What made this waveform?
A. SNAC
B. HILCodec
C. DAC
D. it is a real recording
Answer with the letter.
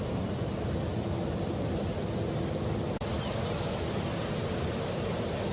D